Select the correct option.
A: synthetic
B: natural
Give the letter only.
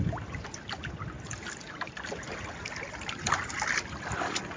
B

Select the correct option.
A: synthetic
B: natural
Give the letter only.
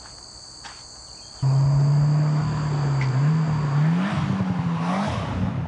B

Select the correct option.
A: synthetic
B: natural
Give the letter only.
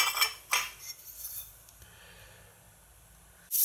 B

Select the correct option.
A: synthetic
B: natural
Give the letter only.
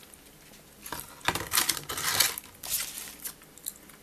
B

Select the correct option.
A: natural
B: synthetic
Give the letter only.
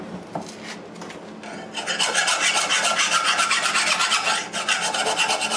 A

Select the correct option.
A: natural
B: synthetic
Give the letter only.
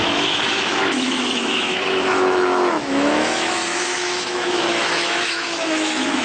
B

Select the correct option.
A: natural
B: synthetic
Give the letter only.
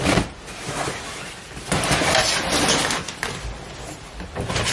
A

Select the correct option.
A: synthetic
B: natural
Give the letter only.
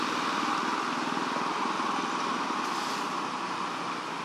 B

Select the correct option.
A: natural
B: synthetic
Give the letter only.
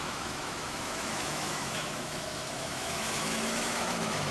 B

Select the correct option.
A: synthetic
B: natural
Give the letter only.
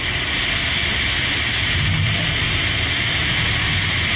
B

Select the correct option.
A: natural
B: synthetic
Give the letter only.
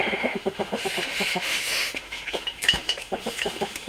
B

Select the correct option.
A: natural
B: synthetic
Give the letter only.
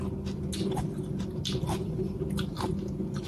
A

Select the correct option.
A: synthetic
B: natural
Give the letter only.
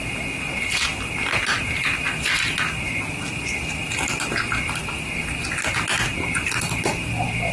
B